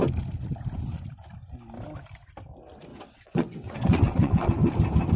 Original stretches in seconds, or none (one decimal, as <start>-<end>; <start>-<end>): 0.0-2.9; 4.5-5.2